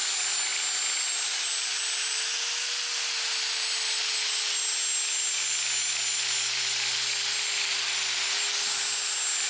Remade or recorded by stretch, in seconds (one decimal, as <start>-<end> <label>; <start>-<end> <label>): 0.0-9.5 recorded